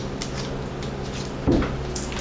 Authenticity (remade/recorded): recorded